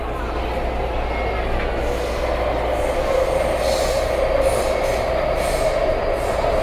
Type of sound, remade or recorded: recorded